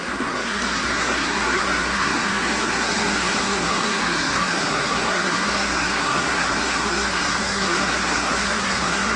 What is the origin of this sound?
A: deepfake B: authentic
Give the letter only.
A